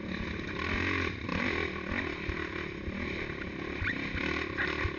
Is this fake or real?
real